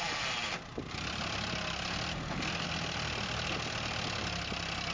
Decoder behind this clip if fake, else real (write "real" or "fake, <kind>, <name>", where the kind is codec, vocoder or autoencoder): real